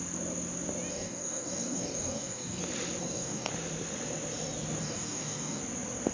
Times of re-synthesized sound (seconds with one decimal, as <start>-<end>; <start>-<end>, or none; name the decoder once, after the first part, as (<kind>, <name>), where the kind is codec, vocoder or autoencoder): 0.9-2.6 (codec, DAC); 3.0-3.5; 4.8-5.6